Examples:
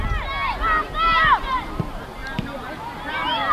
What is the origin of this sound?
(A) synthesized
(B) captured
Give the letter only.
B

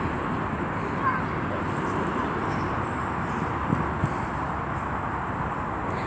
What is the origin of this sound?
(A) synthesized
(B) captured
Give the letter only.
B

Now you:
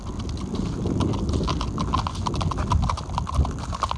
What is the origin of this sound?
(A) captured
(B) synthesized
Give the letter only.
A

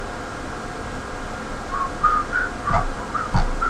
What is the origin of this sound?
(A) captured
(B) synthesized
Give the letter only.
A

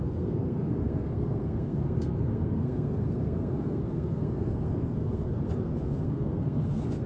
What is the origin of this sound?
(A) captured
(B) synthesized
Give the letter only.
B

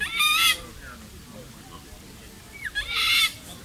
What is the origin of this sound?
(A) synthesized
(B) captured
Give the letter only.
B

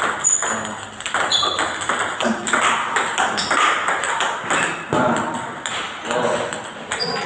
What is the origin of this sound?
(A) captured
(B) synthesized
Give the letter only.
A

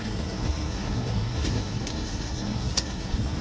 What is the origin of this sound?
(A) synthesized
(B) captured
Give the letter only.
A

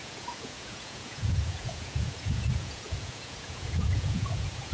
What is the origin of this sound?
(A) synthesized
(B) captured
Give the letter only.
A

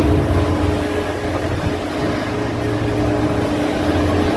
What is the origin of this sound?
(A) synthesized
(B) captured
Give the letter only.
B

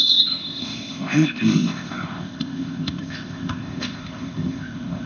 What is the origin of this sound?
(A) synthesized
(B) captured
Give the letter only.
A